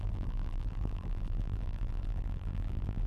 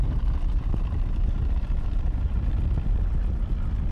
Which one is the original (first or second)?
second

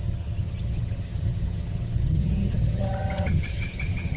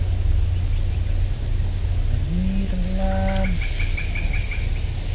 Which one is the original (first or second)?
second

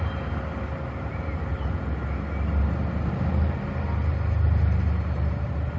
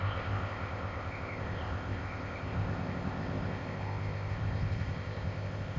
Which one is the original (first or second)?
first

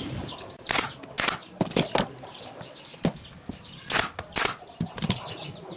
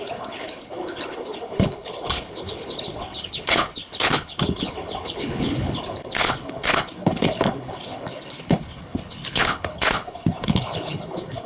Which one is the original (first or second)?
first